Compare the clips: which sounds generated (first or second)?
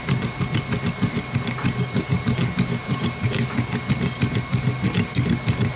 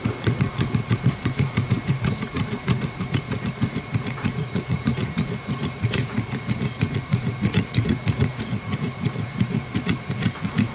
second